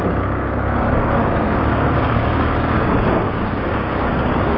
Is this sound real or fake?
fake